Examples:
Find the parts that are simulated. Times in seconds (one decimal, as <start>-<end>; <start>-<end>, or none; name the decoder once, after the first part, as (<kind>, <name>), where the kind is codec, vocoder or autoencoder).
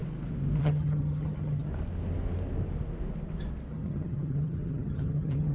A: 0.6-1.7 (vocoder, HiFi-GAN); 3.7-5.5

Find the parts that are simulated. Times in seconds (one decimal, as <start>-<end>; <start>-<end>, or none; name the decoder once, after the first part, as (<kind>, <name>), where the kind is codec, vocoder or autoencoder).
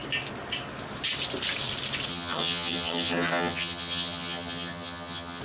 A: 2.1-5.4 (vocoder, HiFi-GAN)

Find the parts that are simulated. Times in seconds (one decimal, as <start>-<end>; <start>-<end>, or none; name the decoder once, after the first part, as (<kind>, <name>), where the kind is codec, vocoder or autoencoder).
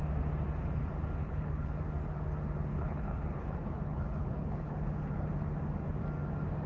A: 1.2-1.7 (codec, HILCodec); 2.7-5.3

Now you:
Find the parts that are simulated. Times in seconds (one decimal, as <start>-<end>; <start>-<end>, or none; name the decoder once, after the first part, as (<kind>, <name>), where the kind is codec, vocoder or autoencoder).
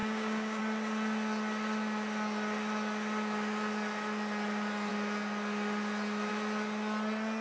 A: 0.0-0.6 (codec, DAC)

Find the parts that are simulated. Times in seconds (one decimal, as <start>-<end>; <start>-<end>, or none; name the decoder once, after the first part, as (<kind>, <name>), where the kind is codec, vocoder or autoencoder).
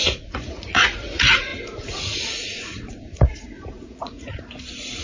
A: 0.0-5.0 (vocoder, Vocos)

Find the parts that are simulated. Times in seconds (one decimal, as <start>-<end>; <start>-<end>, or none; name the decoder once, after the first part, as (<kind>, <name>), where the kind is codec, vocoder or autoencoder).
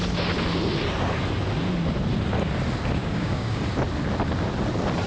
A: 3.0-3.6 (codec, DAC)